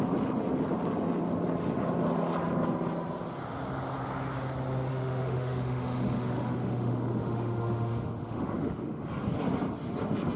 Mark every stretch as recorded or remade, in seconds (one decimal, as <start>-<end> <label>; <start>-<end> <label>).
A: 0.0-4.9 recorded; 4.9-9.0 remade; 9.0-10.4 recorded